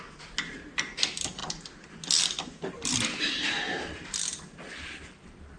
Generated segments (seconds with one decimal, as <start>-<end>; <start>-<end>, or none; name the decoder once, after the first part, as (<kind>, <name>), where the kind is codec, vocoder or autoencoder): none